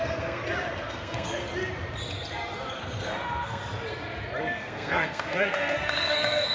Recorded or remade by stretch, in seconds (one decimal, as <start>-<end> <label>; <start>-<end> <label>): 0.0-0.4 remade; 0.4-0.9 recorded; 0.9-1.5 remade; 1.5-2.8 recorded; 2.8-3.6 remade; 3.6-4.4 recorded; 4.4-6.5 remade